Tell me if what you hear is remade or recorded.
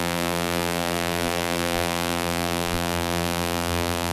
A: remade